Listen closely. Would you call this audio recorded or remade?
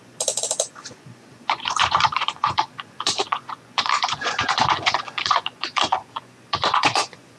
remade